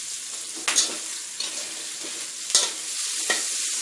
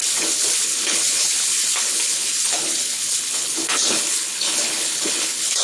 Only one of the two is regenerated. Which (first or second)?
second